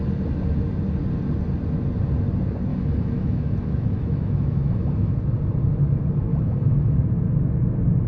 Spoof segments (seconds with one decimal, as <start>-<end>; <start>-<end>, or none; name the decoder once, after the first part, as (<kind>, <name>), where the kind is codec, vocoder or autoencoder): 2.7-5.1 (autoencoder, DAC-VAE); 6.3-7.0